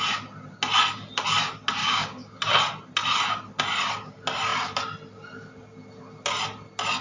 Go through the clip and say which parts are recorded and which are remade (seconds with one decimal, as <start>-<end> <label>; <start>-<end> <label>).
0.0-1.8 recorded; 1.8-2.4 remade; 2.4-7.0 recorded